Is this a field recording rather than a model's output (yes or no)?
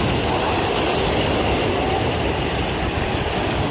yes